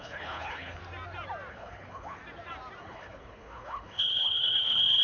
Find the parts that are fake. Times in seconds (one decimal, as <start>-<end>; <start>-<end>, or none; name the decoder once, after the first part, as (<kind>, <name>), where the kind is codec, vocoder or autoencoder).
0.0-0.8 (codec, HILCodec); 1.5-2.2; 2.8-5.0